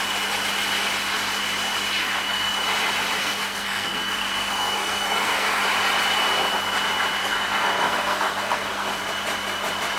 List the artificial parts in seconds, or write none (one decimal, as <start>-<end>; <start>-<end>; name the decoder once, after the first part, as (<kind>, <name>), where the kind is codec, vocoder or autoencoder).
2.0-2.5 (codec, SNAC); 3.2-5.6; 7.2-9.0